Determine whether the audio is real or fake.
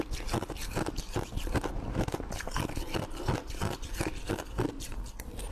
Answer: real